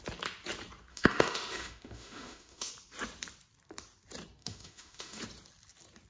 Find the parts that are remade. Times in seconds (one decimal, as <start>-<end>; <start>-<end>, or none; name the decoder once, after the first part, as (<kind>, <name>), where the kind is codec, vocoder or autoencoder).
0.9-2.7 (autoencoder, DAC-VAE); 4.4-5.2